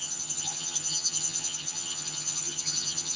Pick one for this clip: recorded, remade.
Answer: remade